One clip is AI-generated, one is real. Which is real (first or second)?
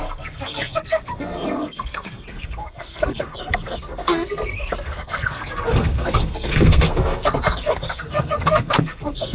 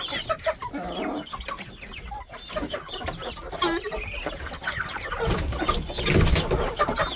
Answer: second